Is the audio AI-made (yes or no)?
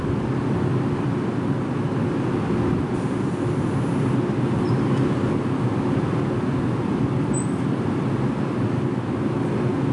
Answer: no